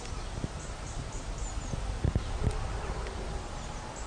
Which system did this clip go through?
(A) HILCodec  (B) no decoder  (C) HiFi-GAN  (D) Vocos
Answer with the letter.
B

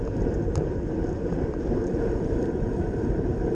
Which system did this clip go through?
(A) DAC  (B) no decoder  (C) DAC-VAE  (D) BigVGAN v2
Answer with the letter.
D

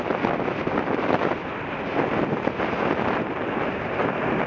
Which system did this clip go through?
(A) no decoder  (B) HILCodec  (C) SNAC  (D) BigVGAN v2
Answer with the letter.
A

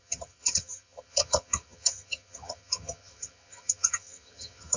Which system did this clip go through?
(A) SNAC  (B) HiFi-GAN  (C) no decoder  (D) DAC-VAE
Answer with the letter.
B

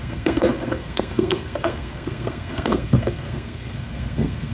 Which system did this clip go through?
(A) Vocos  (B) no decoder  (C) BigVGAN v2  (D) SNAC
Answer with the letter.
D